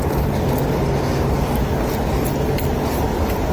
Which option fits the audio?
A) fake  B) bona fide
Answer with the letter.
B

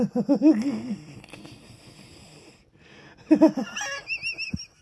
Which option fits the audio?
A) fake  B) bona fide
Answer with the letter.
B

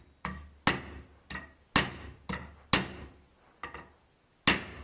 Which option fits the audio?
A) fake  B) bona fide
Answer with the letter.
B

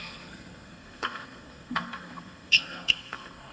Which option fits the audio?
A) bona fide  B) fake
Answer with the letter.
B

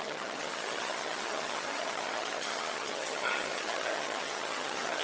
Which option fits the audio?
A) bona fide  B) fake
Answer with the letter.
B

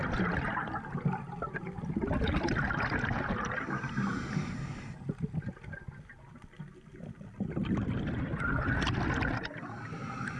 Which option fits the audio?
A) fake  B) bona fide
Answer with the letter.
B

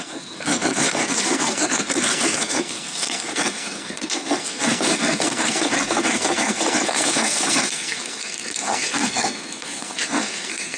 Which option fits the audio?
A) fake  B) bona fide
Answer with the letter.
A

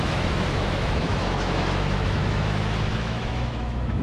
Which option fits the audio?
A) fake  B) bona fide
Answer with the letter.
A